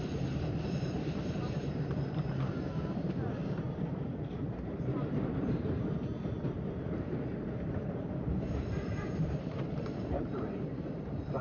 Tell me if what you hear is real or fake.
fake